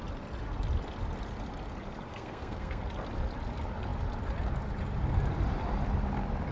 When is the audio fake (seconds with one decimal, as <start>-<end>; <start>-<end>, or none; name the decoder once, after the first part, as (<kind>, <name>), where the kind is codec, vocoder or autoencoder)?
2.1-2.8 (codec, SNAC)